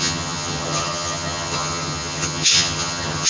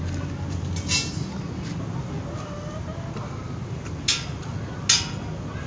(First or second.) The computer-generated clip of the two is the first